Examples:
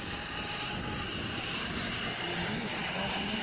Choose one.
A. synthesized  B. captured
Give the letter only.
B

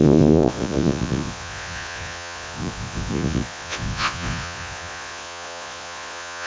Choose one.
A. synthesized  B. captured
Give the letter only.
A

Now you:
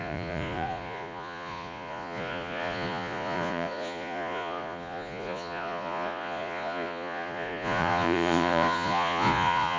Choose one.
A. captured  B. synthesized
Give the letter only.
B